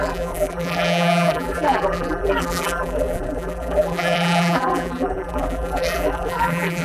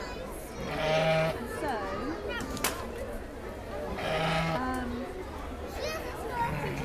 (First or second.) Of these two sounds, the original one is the second